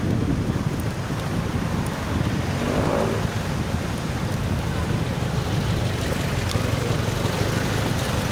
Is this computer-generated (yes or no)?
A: no